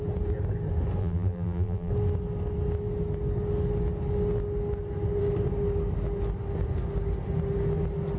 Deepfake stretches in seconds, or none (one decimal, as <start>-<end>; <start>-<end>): 1.0-1.9